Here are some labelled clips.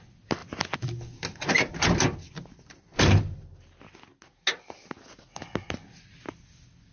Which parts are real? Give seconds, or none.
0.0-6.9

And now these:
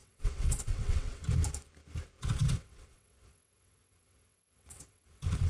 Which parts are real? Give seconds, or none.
1.2-2.2